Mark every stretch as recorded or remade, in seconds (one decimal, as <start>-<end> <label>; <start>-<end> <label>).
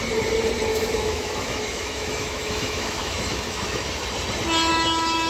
0.0-0.7 recorded; 0.7-3.9 remade; 3.9-4.7 recorded; 4.7-5.3 remade